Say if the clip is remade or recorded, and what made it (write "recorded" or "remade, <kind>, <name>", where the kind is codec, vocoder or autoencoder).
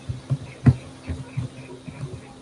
recorded